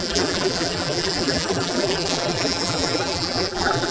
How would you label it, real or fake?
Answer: fake